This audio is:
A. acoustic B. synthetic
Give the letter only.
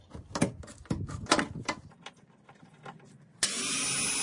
A